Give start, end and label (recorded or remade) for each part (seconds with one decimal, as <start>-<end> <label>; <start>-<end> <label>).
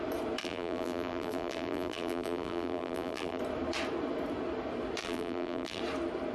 0.0-0.4 recorded; 0.4-3.4 remade; 3.4-5.0 recorded; 5.0-5.8 remade; 5.8-6.3 recorded